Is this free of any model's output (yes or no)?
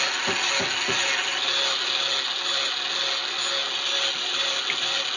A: yes